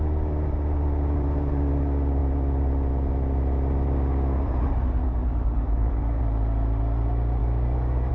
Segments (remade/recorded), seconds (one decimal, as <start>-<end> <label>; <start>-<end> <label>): 0.0-5.0 recorded; 5.0-6.2 remade; 6.2-7.4 recorded; 7.4-8.1 remade